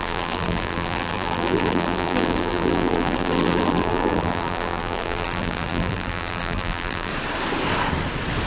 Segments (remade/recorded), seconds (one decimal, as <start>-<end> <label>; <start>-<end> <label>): 0.0-7.1 remade; 7.1-8.5 recorded